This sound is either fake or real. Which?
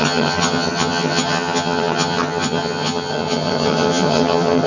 fake